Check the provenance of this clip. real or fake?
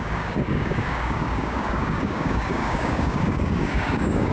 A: fake